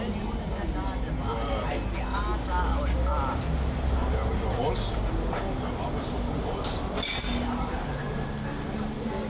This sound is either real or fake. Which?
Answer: real